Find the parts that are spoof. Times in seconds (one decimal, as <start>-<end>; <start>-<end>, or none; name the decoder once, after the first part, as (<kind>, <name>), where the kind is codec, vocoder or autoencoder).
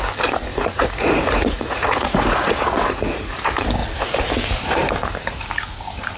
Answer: 0.5-3.4 (vocoder, Vocos)